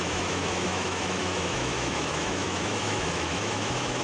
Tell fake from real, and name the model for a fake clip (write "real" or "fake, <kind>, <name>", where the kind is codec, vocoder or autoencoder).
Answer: fake, autoencoder, DAC-VAE